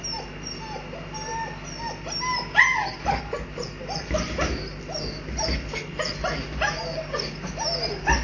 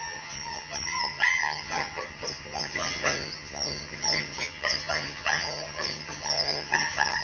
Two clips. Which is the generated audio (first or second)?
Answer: second